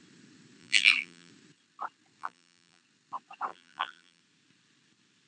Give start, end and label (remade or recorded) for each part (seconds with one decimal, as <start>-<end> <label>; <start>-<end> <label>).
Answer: 0.0-0.6 recorded; 0.6-1.3 remade; 1.3-2.2 recorded; 2.2-2.8 remade; 2.8-3.5 recorded; 3.5-4.2 remade; 4.2-5.3 recorded